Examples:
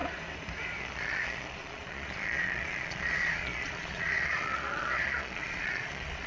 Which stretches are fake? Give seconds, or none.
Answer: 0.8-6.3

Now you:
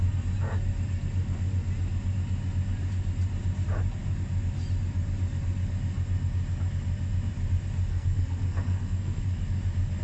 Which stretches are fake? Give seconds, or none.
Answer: 7.9-9.2

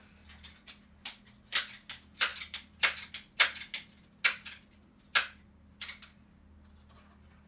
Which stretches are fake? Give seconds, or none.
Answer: none

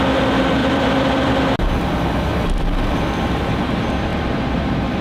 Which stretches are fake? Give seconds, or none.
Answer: 0.6-1.5; 4.1-5.0

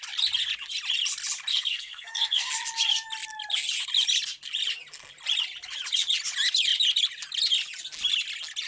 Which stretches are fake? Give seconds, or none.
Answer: 1.5-2.5